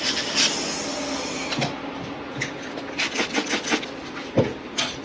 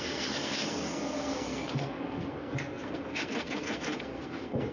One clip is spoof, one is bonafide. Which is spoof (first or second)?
second